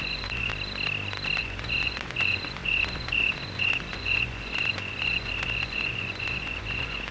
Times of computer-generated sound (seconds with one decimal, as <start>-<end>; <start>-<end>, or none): 0.0-0.5; 1.4-7.1